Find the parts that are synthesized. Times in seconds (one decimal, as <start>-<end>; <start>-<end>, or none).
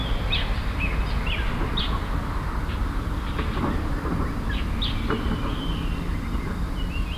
none